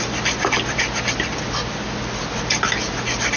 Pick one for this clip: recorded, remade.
recorded